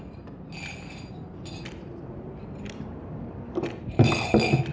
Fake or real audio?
real